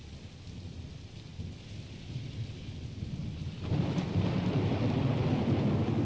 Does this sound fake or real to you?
real